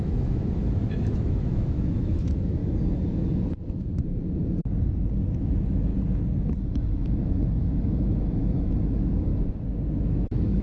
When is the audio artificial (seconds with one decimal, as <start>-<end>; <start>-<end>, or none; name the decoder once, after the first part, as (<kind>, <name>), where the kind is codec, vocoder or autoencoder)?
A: 0.0-2.6 (autoencoder, DAC-VAE); 5.4-5.9; 6.7-9.3; 10.0-10.6